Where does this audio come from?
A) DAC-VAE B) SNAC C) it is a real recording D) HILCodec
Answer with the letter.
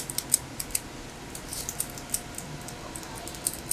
C